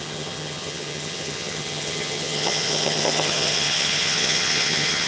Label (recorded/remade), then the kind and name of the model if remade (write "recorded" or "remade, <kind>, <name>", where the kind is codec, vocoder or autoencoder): remade, vocoder, HiFi-GAN